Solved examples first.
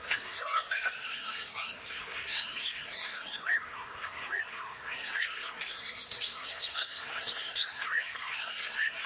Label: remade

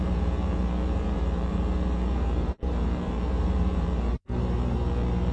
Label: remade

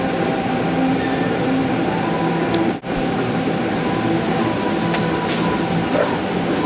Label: recorded